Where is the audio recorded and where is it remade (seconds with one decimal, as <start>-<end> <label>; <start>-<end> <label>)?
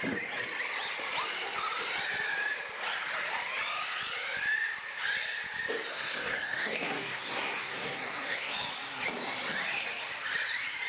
0.0-5.9 recorded; 5.9-8.5 remade; 8.5-10.9 recorded